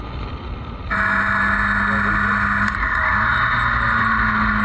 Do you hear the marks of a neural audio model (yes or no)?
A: no